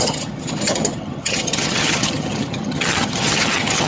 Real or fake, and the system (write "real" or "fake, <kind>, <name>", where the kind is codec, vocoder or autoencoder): fake, vocoder, HiFi-GAN